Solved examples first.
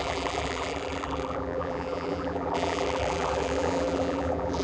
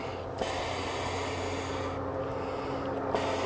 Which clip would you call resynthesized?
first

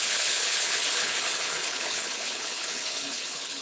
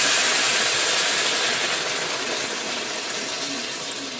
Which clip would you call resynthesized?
first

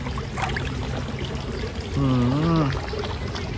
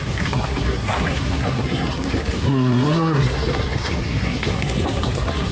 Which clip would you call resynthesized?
second